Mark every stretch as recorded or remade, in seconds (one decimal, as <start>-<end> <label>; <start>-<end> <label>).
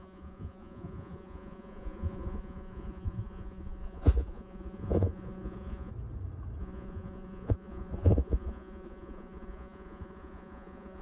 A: 0.0-5.9 remade; 5.9-6.6 recorded; 6.6-11.0 remade